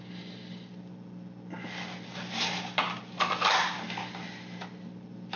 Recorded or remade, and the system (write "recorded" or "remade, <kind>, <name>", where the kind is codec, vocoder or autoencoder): recorded